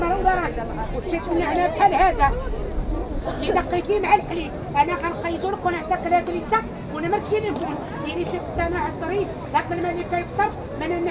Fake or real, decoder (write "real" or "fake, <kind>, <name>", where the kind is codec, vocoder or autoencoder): real